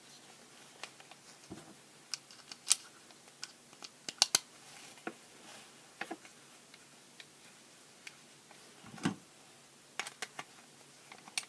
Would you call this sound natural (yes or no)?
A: yes